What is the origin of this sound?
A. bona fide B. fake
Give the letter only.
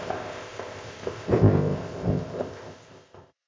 B